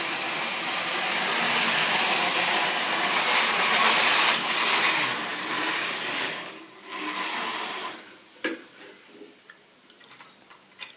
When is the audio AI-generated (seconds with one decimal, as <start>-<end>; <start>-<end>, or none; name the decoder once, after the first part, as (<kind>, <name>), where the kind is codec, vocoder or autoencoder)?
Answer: none